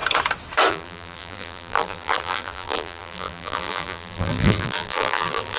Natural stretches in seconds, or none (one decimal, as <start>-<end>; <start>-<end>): 0.0-0.7